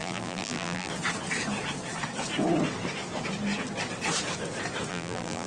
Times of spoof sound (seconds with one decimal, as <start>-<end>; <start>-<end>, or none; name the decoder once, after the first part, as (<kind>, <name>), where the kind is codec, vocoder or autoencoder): 0.0-0.9 (vocoder, BigVGAN v2); 4.9-5.5